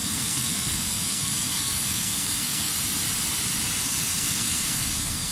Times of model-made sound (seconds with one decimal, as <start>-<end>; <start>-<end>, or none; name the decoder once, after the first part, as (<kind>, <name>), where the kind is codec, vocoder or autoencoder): 0.0-2.7 (codec, SNAC); 3.8-5.3